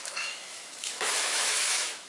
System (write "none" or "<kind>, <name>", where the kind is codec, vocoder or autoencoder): autoencoder, DAC-VAE